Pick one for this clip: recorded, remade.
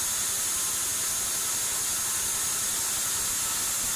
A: recorded